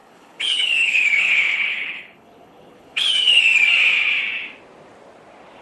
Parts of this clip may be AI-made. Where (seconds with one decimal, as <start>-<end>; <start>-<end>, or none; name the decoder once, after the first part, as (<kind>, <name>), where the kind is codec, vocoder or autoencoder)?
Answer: 0.0-3.4 (codec, HILCodec)